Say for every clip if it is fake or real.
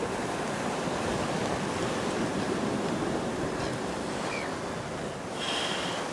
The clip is real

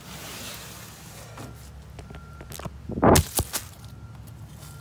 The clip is real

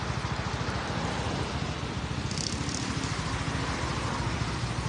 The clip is real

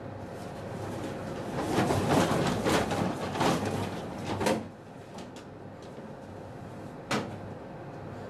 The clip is real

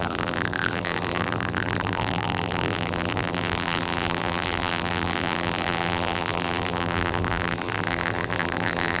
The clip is fake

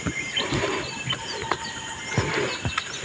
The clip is real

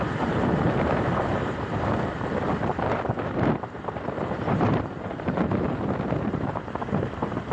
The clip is fake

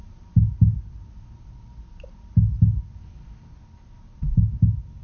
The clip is real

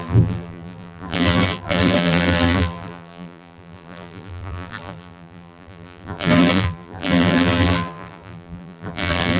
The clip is fake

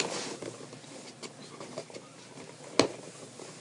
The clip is real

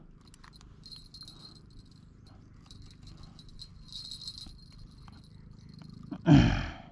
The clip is real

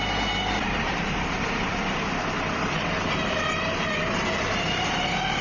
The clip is fake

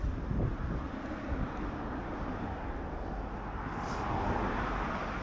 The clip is real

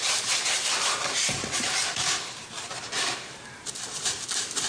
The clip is fake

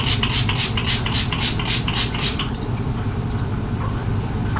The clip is fake